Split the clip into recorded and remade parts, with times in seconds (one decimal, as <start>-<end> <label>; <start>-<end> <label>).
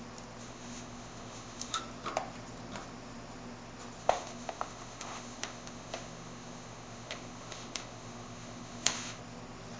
0.0-0.4 recorded; 0.4-1.8 remade; 1.8-4.0 recorded; 4.0-9.2 remade; 9.2-9.8 recorded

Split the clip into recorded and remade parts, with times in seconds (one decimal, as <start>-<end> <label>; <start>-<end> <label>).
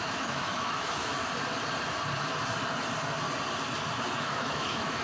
0.0-1.2 remade; 1.2-4.2 recorded; 4.2-5.0 remade